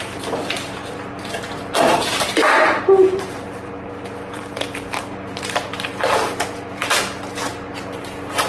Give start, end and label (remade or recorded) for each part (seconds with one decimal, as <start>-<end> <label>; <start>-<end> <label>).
0.0-6.8 remade; 6.8-7.5 recorded; 7.5-8.5 remade